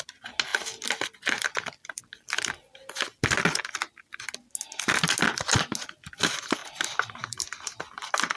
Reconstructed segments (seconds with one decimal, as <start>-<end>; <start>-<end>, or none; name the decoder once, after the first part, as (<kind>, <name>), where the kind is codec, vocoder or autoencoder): 0.5-2.0 (vocoder, BigVGAN v2); 6.6-7.8